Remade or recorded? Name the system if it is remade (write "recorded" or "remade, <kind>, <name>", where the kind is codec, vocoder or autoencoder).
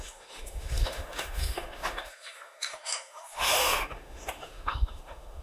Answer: remade, autoencoder, DAC-VAE